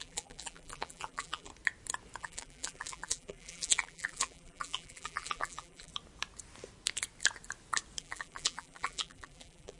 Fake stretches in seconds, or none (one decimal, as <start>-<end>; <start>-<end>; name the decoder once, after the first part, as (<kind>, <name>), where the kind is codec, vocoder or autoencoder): 0.0-1.5 (vocoder, BigVGAN v2); 2.2-5.9; 8.0-9.8